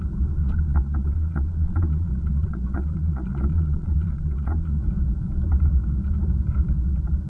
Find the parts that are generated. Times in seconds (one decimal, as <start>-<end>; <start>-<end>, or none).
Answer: 0.4-4.8